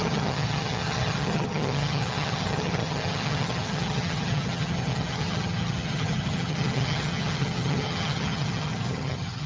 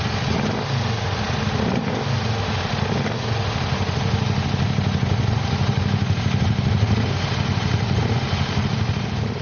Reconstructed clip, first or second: first